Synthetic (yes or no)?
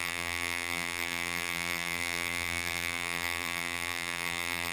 yes